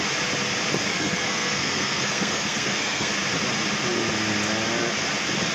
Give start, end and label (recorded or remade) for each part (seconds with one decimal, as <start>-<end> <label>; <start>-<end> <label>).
0.0-0.9 recorded; 0.9-3.1 remade; 3.1-5.5 recorded